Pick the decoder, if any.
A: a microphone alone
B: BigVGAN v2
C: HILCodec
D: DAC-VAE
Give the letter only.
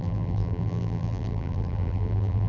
B